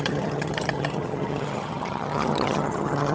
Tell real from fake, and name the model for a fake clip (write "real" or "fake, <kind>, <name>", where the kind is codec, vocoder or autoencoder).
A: fake, vocoder, HiFi-GAN